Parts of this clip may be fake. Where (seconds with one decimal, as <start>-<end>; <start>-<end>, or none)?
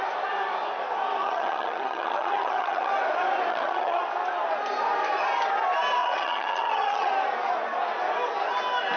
1.2-2.9; 3.5-4.0; 6.0-7.1